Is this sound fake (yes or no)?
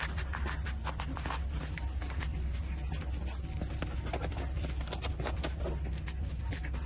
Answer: no